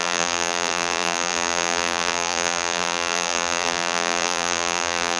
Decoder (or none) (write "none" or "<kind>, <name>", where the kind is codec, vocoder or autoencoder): vocoder, BigVGAN v2